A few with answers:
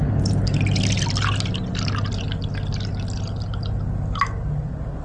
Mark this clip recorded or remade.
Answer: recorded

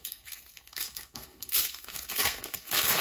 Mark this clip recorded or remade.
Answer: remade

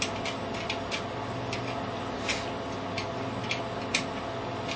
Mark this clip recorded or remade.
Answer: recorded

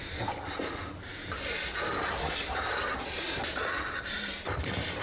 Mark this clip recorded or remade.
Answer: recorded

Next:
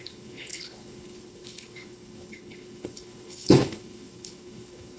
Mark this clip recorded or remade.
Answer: remade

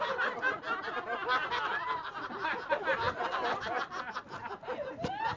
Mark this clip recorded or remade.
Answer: recorded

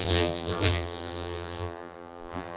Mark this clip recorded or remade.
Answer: remade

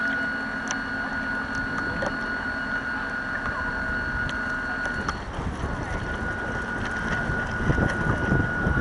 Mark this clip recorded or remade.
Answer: recorded